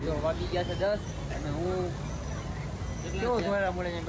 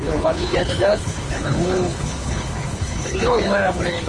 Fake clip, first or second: second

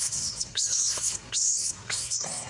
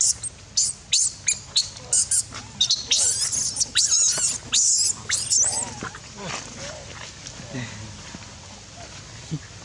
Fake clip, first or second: first